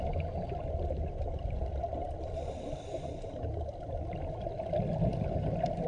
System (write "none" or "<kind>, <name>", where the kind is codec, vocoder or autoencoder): none